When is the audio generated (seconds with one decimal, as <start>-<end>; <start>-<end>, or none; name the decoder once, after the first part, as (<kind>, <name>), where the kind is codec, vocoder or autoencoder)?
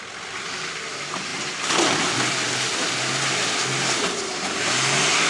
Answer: none